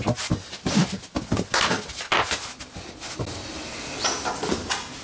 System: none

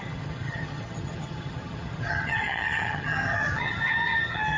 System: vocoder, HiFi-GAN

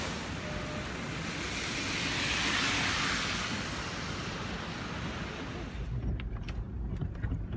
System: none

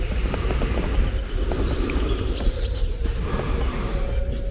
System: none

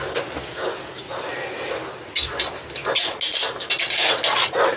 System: none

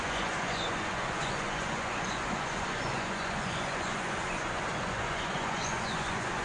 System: vocoder, Vocos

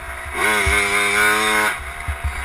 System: none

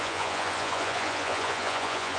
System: vocoder, Vocos